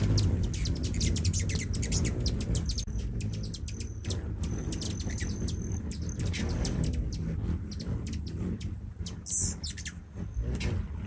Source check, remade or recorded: recorded